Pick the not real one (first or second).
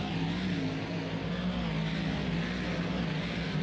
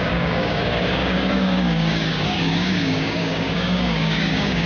second